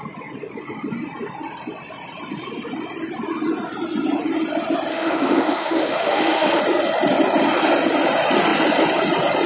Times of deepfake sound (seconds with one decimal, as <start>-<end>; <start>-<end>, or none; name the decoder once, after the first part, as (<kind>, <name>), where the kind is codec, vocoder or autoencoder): 4.9-6.6 (autoencoder, DAC-VAE)